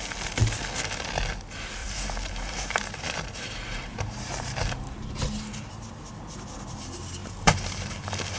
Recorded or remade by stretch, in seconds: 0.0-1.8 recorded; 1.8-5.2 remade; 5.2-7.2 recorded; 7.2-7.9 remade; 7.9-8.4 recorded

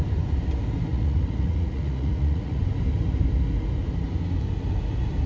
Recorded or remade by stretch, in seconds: 0.0-0.9 recorded; 0.9-2.6 remade; 2.6-5.3 recorded